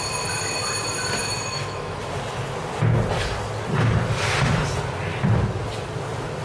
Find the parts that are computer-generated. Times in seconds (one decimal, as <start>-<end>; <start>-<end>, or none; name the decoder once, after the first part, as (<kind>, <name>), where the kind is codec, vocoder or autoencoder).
1.2-2.0 (autoencoder, DAC-VAE)

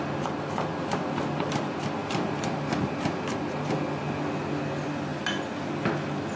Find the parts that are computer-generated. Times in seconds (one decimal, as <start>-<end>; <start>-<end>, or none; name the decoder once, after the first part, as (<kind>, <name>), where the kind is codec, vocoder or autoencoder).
none

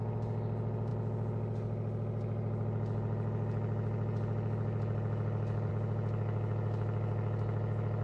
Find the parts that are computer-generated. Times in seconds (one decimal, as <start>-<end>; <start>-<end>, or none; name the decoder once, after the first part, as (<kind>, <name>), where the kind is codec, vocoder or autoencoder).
none

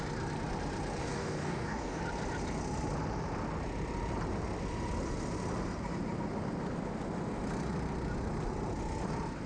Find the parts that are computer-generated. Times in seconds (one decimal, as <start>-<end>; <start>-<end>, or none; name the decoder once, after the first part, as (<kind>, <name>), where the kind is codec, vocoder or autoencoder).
1.0-2.0 (codec, DAC)

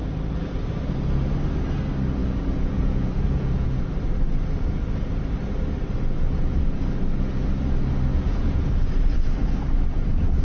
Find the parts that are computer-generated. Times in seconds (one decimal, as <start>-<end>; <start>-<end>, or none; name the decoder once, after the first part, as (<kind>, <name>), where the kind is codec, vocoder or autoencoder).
2.2-3.8 (vocoder, Vocos); 8.1-8.7

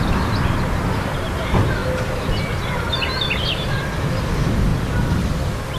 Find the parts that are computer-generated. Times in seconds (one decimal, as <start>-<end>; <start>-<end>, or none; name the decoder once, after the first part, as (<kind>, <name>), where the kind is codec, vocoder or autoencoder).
none

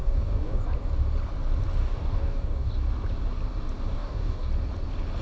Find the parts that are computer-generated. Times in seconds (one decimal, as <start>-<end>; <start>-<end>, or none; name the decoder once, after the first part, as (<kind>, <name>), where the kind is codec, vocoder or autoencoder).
0.0-0.6 (codec, DAC); 1.8-2.7; 3.9-4.5